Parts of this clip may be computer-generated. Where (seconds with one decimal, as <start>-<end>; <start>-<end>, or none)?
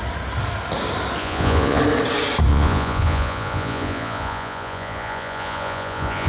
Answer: 1.2-1.8; 2.5-6.3